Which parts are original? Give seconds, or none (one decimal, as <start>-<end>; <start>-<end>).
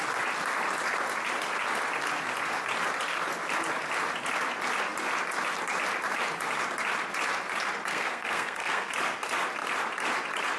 0.0-7.9; 8.9-10.6